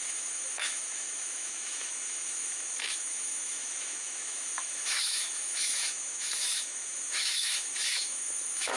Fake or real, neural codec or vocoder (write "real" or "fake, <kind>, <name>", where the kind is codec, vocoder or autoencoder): fake, autoencoder, DAC-VAE